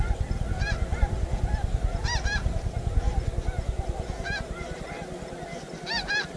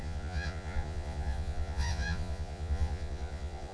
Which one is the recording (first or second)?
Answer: first